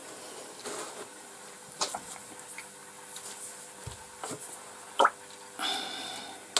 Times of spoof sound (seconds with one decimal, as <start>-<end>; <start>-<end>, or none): 0.0-0.6; 1.1-2.3